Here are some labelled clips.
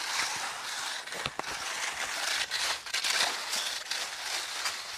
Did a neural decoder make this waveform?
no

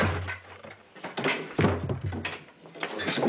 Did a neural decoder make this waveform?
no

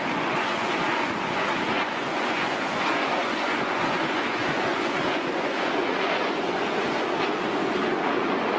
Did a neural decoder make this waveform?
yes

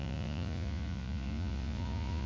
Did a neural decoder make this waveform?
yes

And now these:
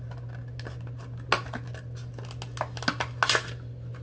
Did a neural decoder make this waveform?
no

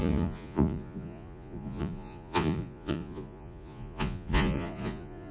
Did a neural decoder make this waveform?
yes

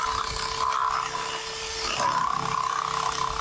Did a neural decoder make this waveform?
no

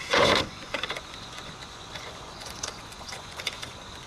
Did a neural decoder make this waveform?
yes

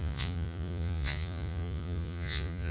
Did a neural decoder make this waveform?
yes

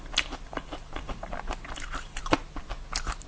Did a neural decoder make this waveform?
no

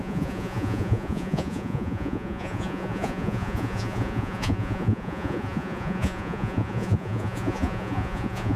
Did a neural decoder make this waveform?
yes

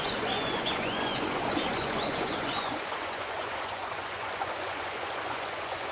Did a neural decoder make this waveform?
yes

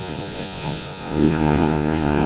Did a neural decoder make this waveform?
yes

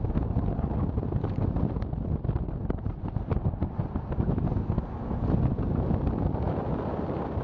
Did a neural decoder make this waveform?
no